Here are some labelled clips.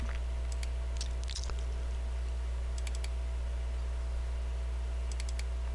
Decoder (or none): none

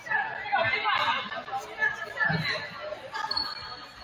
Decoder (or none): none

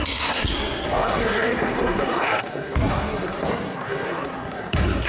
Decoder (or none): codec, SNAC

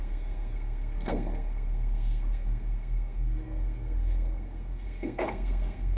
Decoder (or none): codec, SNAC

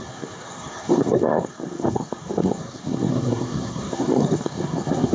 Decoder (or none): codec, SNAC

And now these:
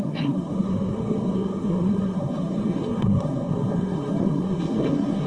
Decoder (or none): codec, SNAC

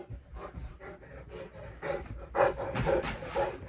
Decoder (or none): none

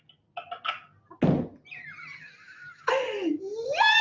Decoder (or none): none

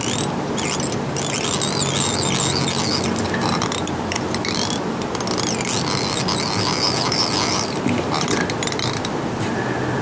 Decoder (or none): none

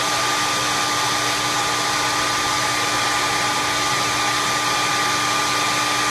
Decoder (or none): none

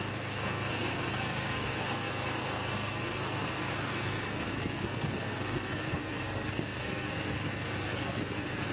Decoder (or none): codec, SNAC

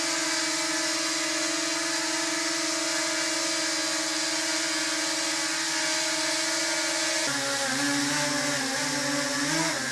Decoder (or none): none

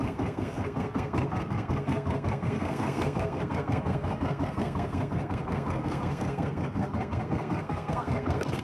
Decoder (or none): codec, SNAC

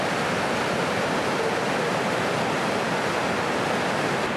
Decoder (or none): none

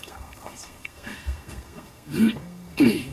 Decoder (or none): codec, SNAC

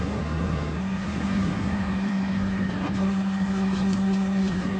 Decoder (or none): codec, SNAC